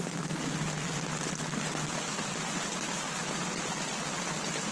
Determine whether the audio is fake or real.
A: real